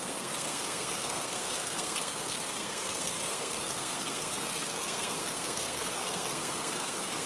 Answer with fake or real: fake